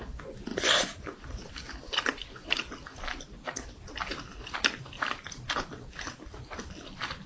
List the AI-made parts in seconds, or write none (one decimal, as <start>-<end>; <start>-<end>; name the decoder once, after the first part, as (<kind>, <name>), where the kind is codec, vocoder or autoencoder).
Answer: none